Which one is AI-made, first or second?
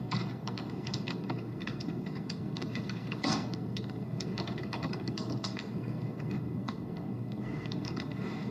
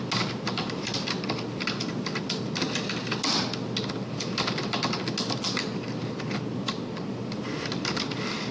first